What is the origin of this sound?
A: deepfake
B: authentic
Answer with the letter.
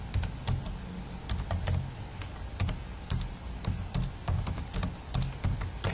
B